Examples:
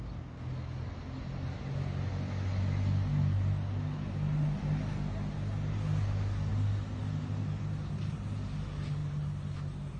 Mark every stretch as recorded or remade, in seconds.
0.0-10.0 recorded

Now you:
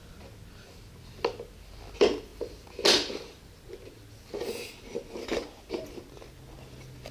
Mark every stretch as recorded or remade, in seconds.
0.0-7.1 recorded

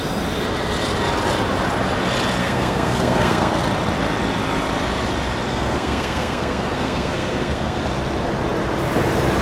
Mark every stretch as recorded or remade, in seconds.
0.0-2.4 recorded; 2.4-3.6 remade; 3.6-5.5 recorded; 5.5-7.8 remade; 7.8-9.4 recorded

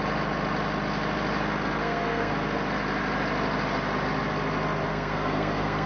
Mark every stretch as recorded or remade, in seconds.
0.0-1.8 recorded; 1.8-2.3 remade; 2.3-4.9 recorded; 4.9-5.9 remade

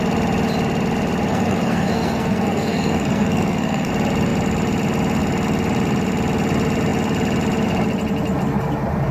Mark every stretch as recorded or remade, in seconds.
0.0-1.3 recorded; 1.3-3.9 remade; 3.9-9.1 recorded

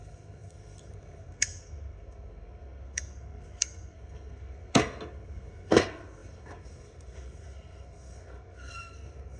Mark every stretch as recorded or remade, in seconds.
0.0-9.4 remade

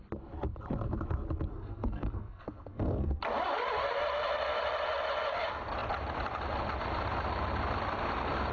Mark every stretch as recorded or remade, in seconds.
0.0-1.5 recorded; 1.5-3.2 remade; 3.2-8.5 recorded

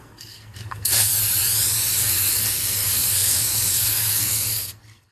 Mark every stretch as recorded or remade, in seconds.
0.0-1.1 remade; 1.1-1.9 recorded; 1.9-5.1 remade